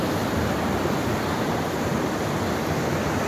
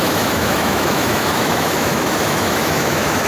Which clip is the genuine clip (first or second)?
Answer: first